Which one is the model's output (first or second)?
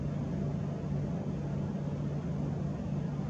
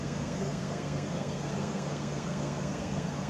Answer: second